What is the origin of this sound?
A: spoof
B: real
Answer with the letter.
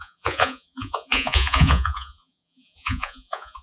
A